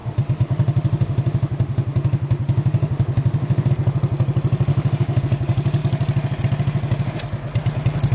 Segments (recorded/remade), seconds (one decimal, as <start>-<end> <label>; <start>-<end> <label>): 0.0-3.7 remade; 3.7-4.7 recorded; 4.7-5.2 remade; 5.2-8.1 recorded